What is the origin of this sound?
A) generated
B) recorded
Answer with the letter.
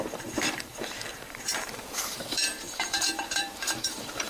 A